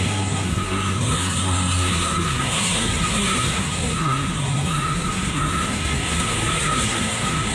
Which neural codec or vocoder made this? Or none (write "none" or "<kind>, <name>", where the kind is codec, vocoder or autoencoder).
codec, SNAC